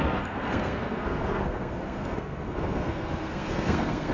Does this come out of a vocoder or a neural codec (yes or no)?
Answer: yes